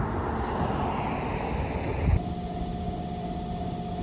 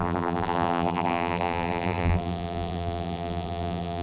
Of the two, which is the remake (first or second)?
second